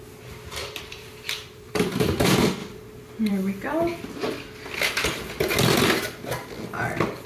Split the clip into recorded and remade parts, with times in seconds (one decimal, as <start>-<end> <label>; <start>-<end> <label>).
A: 0.0-0.6 recorded; 0.6-1.9 remade; 1.9-2.6 recorded; 2.6-3.3 remade; 3.3-7.3 recorded